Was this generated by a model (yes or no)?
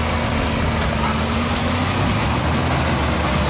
no